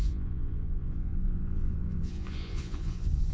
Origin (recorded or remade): remade